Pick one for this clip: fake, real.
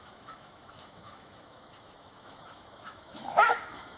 fake